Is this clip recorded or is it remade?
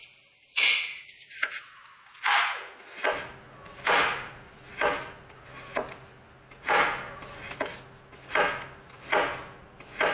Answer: recorded